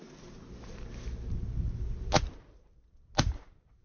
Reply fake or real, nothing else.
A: real